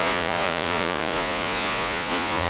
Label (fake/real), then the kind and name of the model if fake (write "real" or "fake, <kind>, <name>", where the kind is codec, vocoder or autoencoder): fake, vocoder, Vocos